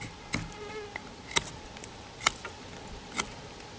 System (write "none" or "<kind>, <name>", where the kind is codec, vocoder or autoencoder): none